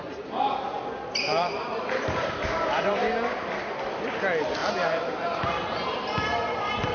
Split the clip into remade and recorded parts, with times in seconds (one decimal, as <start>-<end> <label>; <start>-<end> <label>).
0.0-1.3 recorded; 1.3-3.8 remade; 3.8-4.6 recorded; 4.6-6.9 remade